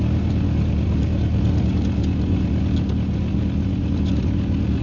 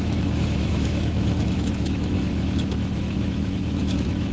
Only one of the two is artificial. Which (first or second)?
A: second